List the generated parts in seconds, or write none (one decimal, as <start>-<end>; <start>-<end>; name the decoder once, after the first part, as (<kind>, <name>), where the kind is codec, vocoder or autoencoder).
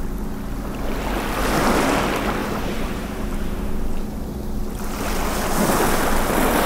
2.4-3.7 (vocoder, BigVGAN v2)